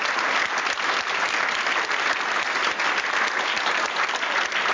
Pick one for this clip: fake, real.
real